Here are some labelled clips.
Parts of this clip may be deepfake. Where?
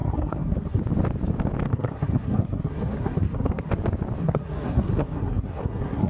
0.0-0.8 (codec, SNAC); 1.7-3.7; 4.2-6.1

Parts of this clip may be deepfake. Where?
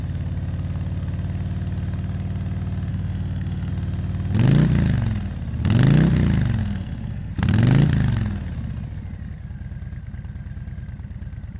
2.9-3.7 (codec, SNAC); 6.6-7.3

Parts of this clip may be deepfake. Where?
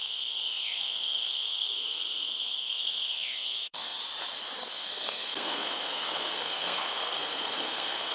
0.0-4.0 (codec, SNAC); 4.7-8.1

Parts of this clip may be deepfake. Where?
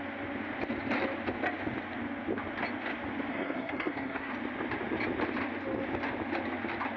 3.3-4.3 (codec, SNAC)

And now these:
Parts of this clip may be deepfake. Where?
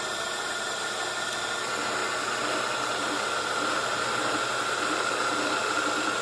none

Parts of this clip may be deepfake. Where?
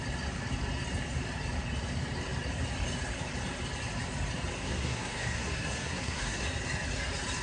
4.6-6.4 (codec, SNAC)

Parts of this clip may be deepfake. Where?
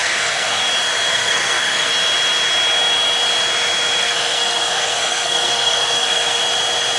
0.0-0.6 (codec, SNAC); 1.1-1.9; 4.0-6.4